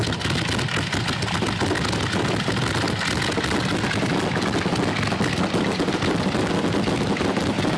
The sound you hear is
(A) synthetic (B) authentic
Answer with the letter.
B